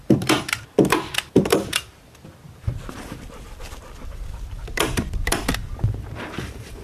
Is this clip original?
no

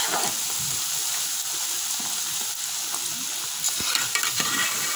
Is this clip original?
yes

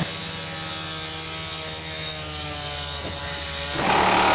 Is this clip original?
yes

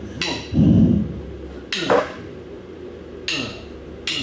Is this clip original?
yes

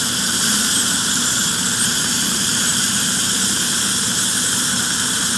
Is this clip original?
no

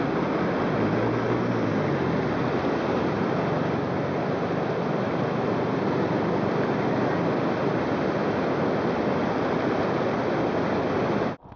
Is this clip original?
yes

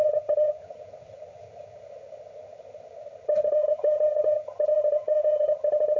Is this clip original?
no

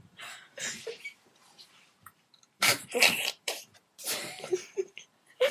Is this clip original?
no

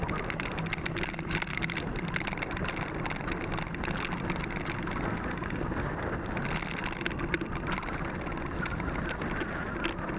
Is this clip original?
yes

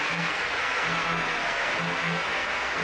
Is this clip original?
no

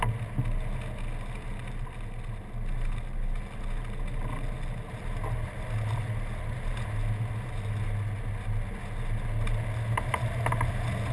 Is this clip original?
yes